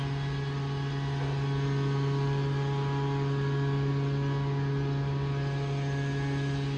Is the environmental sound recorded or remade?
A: recorded